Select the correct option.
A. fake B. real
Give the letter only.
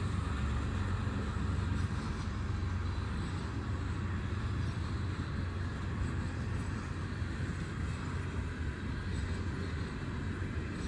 B